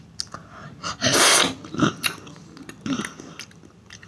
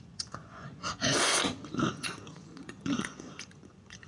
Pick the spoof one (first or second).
second